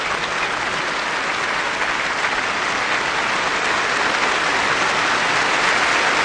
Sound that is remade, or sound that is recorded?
recorded